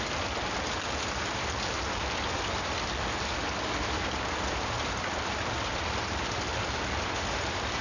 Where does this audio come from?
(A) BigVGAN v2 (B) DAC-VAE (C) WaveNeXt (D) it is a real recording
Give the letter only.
A